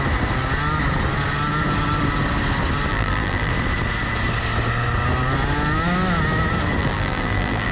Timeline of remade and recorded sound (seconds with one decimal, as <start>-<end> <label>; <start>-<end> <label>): 0.0-2.9 recorded; 2.9-3.5 remade; 3.5-6.8 recorded; 6.8-7.7 remade